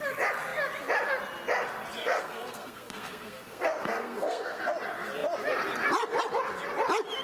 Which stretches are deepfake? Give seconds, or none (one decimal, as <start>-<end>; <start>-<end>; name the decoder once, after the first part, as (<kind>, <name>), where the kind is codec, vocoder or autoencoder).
2.0-4.6 (codec, SNAC)